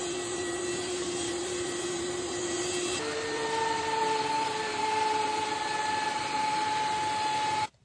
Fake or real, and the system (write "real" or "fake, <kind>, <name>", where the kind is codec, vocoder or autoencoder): fake, vocoder, BigVGAN v2